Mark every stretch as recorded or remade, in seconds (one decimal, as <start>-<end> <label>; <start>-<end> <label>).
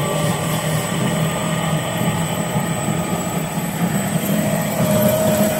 0.0-5.6 remade